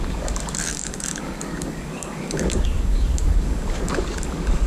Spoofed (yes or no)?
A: yes